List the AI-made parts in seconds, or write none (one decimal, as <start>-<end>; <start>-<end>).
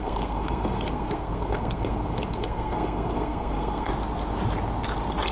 0.0-3.9